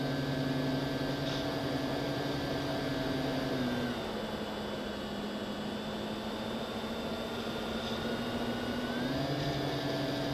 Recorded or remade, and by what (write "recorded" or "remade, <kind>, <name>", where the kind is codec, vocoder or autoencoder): recorded